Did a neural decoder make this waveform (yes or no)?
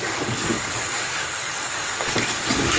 yes